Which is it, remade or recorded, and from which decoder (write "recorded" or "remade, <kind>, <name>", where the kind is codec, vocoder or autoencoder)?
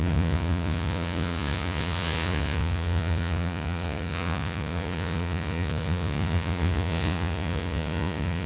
remade, vocoder, Vocos